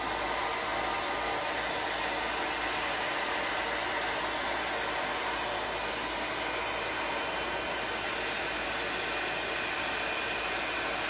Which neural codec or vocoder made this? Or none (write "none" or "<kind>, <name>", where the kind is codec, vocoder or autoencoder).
none